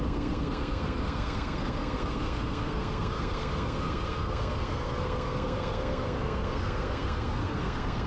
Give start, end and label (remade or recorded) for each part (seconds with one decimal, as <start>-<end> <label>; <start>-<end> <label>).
0.0-8.1 remade